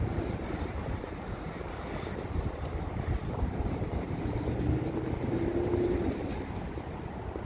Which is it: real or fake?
fake